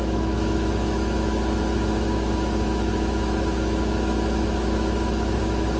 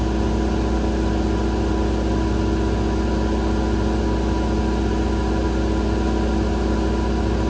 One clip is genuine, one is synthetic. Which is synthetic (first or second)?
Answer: first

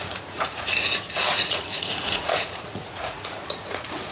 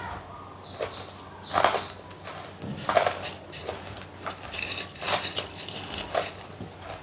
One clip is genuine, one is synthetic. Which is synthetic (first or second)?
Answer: first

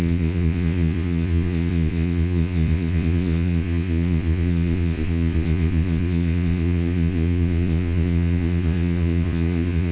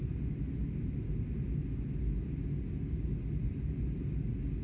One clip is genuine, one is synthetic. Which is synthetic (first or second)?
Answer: first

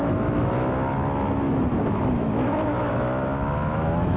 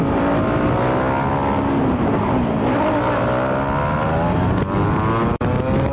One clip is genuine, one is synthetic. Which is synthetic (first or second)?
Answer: first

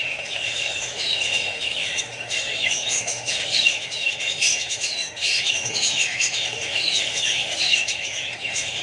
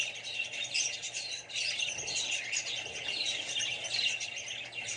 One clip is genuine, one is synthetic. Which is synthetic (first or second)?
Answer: first